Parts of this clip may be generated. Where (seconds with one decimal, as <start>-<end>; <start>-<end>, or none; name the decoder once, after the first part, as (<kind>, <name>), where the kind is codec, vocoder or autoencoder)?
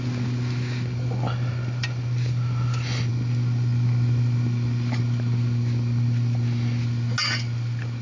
none